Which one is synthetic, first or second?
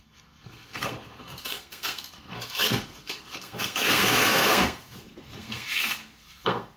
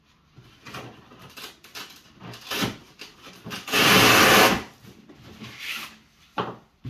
first